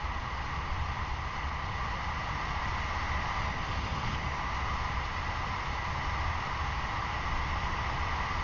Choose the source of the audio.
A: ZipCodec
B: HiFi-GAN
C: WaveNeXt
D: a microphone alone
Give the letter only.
D